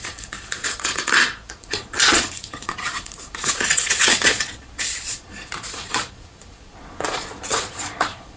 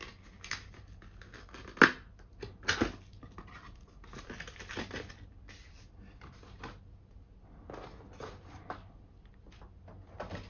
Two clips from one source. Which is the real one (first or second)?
second